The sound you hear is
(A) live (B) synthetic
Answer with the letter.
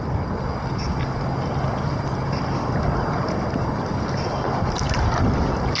A